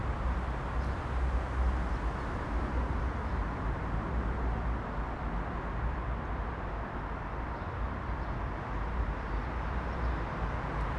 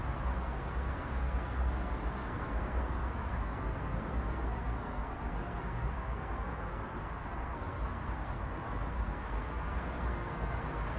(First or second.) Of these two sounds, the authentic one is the first